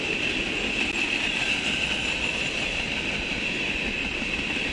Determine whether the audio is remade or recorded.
recorded